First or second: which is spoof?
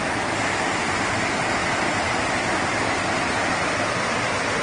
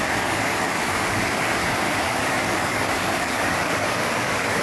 second